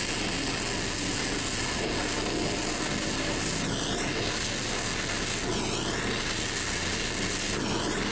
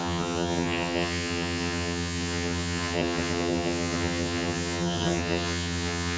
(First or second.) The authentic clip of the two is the first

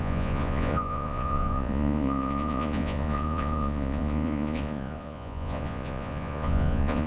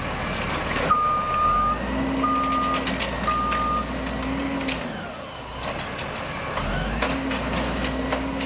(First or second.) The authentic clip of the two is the second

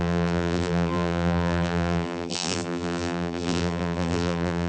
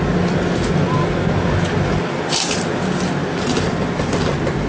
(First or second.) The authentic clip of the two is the second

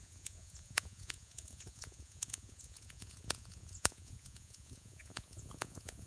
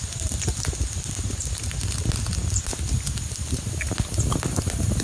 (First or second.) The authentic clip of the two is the second